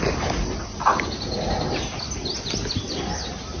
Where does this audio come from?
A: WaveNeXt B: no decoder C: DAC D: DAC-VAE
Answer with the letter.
B